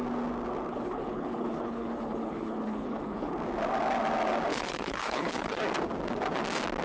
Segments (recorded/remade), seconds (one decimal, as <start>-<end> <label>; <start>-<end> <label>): 0.0-0.7 recorded; 0.7-3.3 remade; 3.3-4.5 recorded; 4.5-5.6 remade; 5.6-6.8 recorded